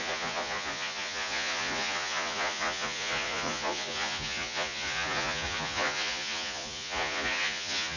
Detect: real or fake fake